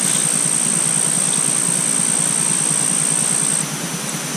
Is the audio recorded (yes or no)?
yes